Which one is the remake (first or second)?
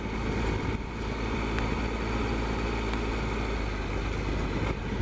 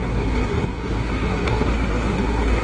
second